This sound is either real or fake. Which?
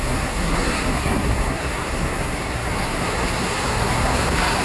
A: fake